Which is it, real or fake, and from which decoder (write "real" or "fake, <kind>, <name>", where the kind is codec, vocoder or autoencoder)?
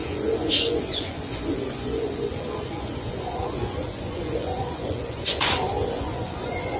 fake, vocoder, Vocos